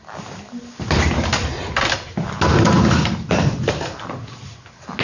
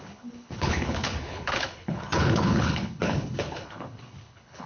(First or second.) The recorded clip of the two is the first